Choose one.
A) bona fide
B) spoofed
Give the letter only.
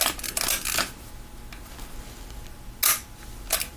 A